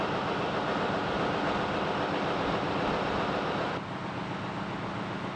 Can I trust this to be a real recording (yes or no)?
yes